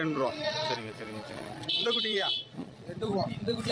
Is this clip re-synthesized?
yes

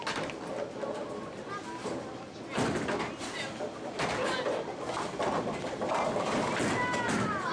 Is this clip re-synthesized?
no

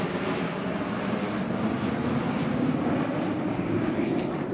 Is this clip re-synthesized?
no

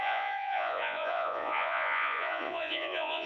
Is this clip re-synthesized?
yes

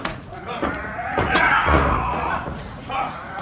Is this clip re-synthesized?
yes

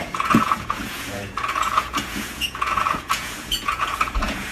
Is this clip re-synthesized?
yes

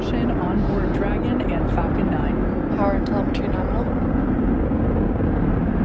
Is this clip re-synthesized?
no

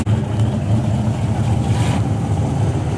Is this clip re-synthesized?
no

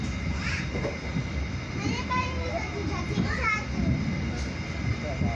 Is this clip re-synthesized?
no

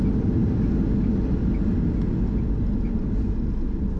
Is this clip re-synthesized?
no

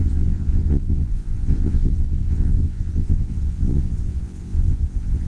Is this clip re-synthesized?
yes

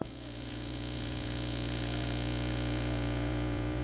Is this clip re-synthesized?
yes